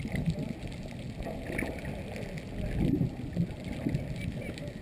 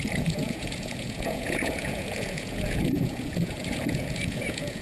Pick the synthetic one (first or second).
second